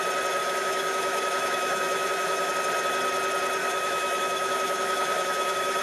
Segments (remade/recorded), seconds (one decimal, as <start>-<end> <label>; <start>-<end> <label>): 0.0-0.4 recorded; 0.4-2.5 remade; 2.5-3.6 recorded; 3.6-5.8 remade